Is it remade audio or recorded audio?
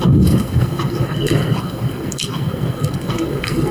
remade